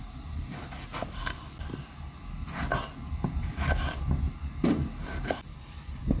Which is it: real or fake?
real